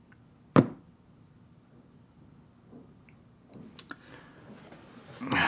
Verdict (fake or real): real